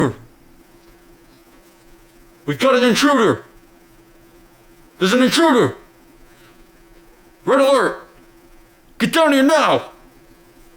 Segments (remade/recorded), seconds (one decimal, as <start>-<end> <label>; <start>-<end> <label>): 0.0-0.6 recorded; 0.6-8.8 remade; 8.8-9.5 recorded; 9.5-10.8 remade